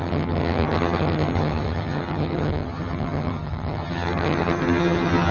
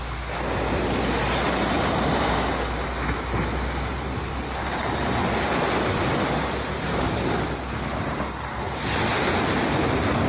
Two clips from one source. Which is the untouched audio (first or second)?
second